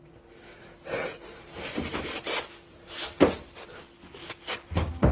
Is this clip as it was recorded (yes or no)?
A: yes